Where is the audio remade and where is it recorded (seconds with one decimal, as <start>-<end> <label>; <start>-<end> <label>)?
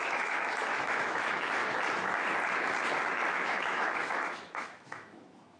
0.0-1.6 remade; 1.6-3.3 recorded; 3.3-5.6 remade